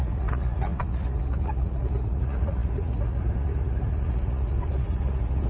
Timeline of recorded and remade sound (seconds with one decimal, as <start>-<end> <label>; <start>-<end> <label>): 0.0-5.5 remade

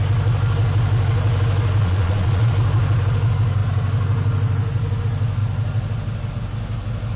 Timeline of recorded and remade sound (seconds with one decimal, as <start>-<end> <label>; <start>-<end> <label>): 0.0-1.8 recorded; 1.8-2.5 remade; 2.5-7.2 recorded